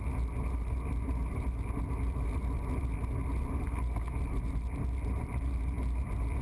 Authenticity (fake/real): real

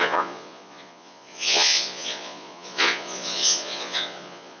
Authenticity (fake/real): fake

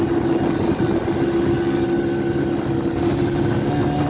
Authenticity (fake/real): real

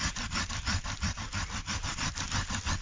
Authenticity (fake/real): real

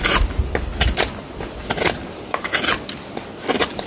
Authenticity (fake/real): real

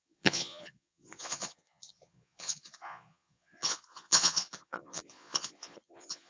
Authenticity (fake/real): fake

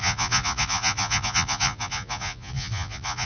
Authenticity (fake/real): fake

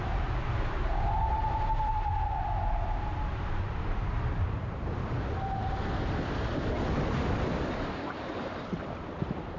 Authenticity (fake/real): real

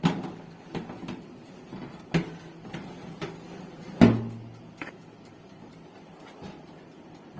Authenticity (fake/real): real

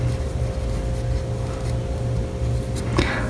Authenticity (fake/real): real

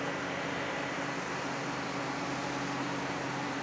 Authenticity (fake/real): real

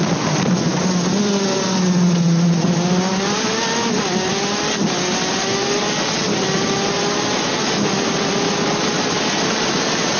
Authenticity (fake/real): real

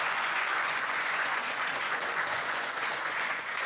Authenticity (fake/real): fake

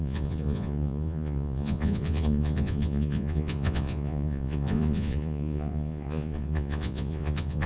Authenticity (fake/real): fake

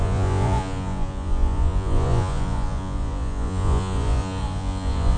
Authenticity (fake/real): fake